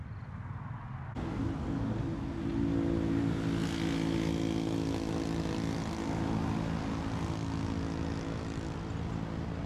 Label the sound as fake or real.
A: real